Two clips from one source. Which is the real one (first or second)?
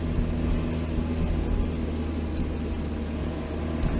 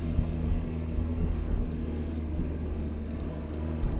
first